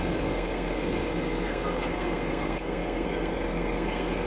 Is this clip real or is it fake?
fake